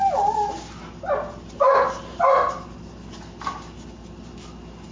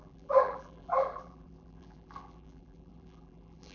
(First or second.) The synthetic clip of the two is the second